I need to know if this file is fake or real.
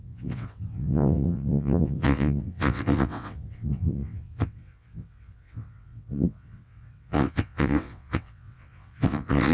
fake